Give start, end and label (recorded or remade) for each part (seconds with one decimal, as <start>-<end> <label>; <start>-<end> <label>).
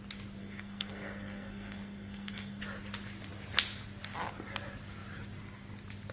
0.0-0.4 recorded; 0.4-2.6 remade; 2.6-6.1 recorded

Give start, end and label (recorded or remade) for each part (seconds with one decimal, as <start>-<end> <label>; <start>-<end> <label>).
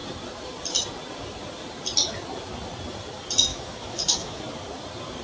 0.0-3.5 recorded; 3.5-4.4 remade; 4.4-5.2 recorded